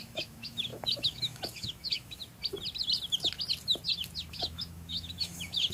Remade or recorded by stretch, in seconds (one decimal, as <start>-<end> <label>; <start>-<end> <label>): 0.0-2.2 remade; 2.2-4.3 recorded; 4.3-5.7 remade